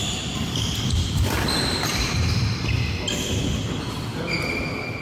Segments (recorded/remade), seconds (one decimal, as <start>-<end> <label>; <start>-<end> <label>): 0.0-2.2 remade; 2.2-5.0 recorded